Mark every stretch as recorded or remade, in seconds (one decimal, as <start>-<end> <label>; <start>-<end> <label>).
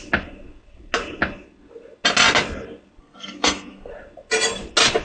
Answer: 0.0-3.0 recorded; 3.0-3.9 remade; 3.9-5.0 recorded